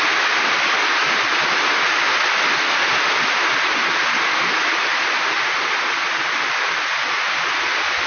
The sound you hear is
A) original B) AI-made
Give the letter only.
A